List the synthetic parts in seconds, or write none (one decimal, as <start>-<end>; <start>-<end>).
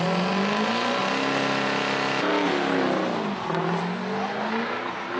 none